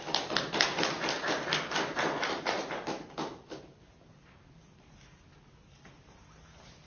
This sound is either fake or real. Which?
real